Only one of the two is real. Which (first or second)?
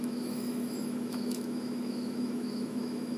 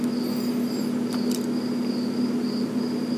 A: second